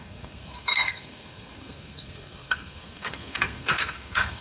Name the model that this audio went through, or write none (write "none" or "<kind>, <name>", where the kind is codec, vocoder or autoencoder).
codec, SNAC